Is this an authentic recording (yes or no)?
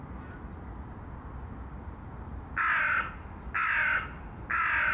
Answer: yes